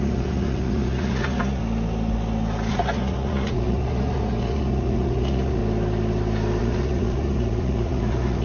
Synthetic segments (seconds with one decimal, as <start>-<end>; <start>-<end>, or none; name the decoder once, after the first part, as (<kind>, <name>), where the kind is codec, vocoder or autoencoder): 0.0-1.6 (vocoder, Vocos); 2.7-5.6; 6.6-8.4